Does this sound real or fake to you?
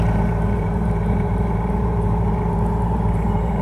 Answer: fake